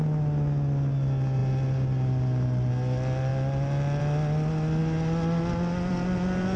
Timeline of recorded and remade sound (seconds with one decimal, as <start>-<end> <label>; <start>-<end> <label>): 0.0-6.6 recorded